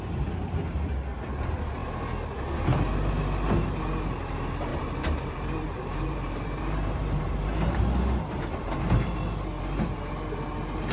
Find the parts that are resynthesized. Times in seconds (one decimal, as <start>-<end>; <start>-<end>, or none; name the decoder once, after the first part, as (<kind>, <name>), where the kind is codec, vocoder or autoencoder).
4.7-7.8 (vocoder, BigVGAN v2)